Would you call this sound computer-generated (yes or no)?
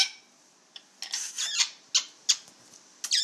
no